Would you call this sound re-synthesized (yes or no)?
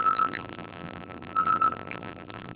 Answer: yes